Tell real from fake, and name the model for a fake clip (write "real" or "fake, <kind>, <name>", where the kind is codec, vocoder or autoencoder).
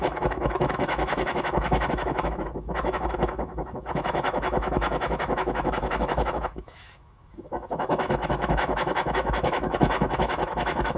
fake, autoencoder, DAC-VAE